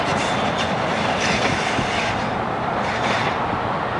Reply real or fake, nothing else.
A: real